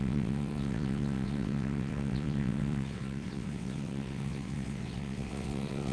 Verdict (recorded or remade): remade